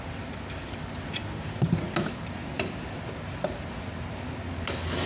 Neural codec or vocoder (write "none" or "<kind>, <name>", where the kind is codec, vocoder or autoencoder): none